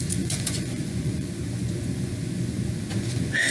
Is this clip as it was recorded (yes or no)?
no